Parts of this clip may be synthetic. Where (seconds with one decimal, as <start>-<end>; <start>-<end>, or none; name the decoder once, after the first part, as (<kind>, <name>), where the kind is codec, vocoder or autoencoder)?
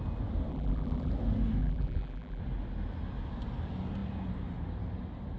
0.5-1.1 (vocoder, BigVGAN v2); 1.6-2.4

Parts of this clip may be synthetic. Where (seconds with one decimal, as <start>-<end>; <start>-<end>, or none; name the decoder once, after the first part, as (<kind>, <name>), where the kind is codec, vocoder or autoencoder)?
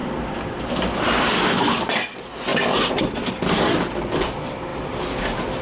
1.3-2.5 (vocoder, BigVGAN v2); 3.3-5.6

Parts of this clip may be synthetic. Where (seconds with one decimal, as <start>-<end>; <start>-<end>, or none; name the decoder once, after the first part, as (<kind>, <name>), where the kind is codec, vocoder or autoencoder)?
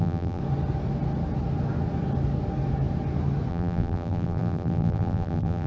0.0-0.4 (vocoder, BigVGAN v2); 3.5-5.7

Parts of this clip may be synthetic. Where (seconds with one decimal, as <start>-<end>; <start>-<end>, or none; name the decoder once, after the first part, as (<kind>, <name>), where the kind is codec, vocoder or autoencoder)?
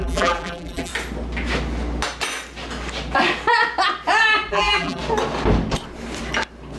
0.0-0.9 (vocoder, BigVGAN v2); 4.5-5.0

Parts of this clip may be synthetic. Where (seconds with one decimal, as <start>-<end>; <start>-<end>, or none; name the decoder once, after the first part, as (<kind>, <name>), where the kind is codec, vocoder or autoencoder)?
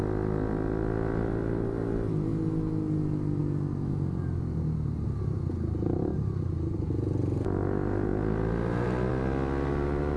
none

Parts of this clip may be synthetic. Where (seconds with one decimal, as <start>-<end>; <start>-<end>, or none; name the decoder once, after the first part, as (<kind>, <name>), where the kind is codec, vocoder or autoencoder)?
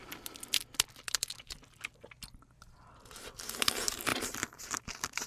4.1-5.3 (vocoder, BigVGAN v2)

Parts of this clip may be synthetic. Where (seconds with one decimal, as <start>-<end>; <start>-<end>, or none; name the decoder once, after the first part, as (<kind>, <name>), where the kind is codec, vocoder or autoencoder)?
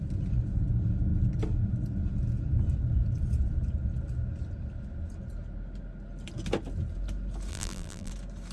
7.5-8.1 (vocoder, BigVGAN v2)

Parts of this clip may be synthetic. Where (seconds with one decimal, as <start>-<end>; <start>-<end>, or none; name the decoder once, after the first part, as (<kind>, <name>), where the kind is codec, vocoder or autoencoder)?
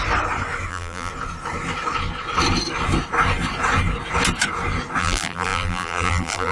0.7-1.1 (vocoder, BigVGAN v2); 5.0-6.5